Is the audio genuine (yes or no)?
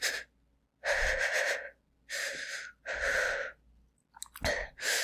yes